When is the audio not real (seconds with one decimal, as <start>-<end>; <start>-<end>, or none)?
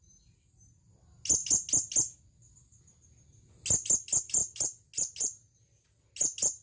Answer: none